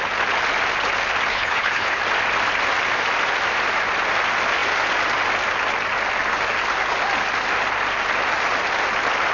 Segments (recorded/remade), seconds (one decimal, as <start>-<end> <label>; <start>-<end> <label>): 0.0-1.3 recorded; 1.3-2.0 remade; 2.0-9.3 recorded